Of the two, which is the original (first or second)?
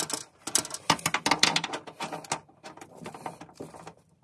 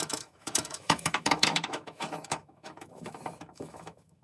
first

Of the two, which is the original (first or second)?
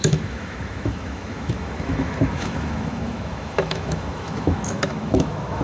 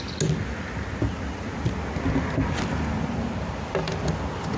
second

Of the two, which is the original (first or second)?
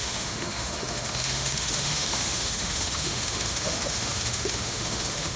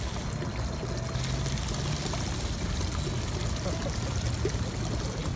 second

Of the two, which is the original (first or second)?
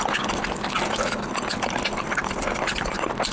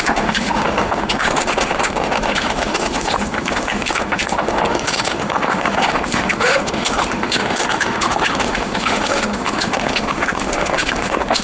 first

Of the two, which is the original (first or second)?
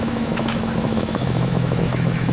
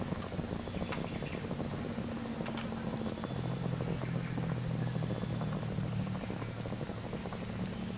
second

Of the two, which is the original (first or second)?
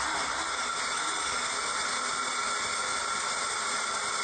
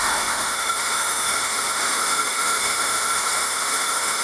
first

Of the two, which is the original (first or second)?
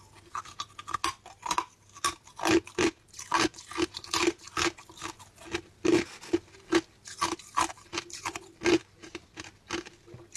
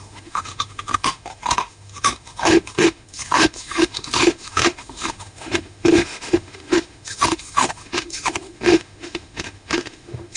first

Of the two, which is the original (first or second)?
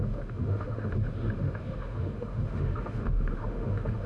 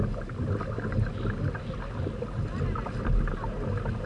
second